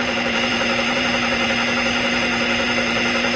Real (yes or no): no